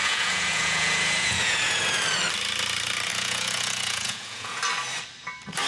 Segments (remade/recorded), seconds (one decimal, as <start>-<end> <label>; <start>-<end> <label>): 0.0-2.0 remade; 2.0-3.1 recorded; 3.1-4.6 remade; 4.6-5.7 recorded

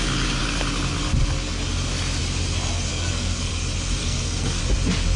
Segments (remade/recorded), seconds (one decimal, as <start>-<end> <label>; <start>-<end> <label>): 0.0-2.9 recorded; 2.9-3.5 remade; 3.5-4.0 recorded; 4.0-4.6 remade; 4.6-5.2 recorded

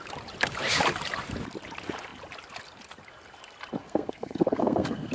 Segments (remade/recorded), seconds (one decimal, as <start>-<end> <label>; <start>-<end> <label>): 0.0-3.8 recorded; 3.8-5.1 remade

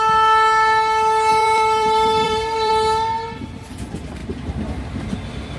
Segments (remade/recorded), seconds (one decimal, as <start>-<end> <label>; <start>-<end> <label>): 0.0-1.3 recorded; 1.3-2.7 remade; 2.7-4.2 recorded; 4.2-5.6 remade

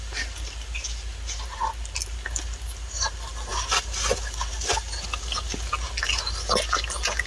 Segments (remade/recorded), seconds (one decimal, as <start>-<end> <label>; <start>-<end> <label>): 0.0-3.5 recorded; 3.5-4.7 remade; 4.7-7.3 recorded

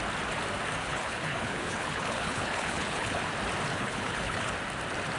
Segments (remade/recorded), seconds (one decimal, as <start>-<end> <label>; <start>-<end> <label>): 0.0-0.8 recorded; 0.8-3.2 remade; 3.2-3.7 recorded; 3.7-4.5 remade; 4.5-5.2 recorded

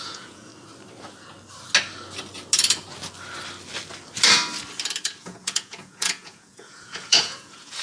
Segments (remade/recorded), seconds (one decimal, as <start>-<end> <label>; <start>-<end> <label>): 0.0-0.5 remade; 0.5-5.2 recorded; 5.2-7.8 remade

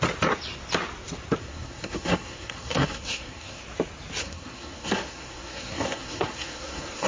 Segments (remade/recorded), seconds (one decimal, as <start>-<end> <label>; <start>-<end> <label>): 0.0-1.4 recorded; 1.4-3.6 remade; 3.6-4.2 recorded; 4.2-7.1 remade